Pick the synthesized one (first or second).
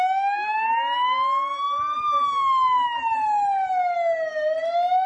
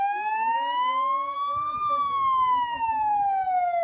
second